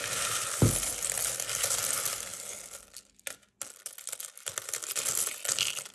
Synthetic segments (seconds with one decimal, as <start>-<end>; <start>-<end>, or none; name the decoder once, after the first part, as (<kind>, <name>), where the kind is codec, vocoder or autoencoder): none